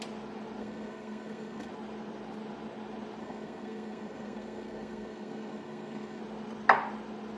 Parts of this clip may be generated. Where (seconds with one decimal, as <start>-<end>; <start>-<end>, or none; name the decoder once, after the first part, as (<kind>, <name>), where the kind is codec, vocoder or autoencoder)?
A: 0.6-1.7 (codec, SNAC); 3.2-6.2